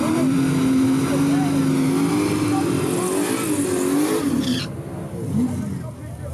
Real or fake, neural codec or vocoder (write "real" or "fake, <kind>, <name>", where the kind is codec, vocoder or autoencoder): real